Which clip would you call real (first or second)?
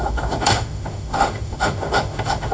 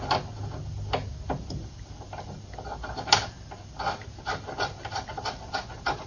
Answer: second